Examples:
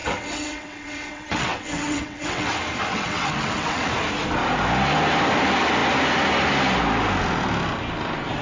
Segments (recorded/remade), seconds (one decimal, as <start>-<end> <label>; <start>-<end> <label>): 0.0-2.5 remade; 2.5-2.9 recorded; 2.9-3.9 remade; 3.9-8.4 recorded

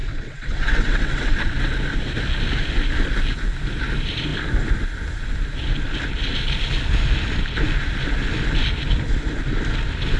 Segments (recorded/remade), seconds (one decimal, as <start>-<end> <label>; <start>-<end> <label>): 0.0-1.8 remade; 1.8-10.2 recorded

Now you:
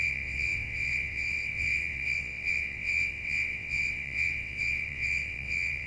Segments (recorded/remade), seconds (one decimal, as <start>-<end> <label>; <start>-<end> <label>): 0.0-5.9 remade

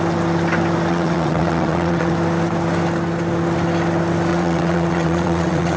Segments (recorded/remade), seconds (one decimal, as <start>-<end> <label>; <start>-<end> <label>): 0.0-0.9 recorded; 0.9-2.1 remade; 2.1-4.3 recorded; 4.3-5.8 remade

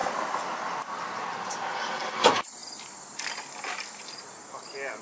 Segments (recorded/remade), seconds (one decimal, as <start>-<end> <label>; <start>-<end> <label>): 0.0-5.0 recorded

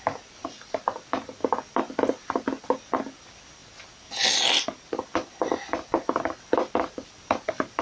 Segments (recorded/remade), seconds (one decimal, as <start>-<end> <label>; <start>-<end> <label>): 0.0-7.8 recorded